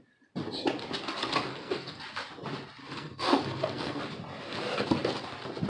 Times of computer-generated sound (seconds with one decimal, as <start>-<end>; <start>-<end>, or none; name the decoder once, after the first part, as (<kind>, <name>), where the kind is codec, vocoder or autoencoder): 1.5-2.0 (codec, SNAC); 2.8-4.0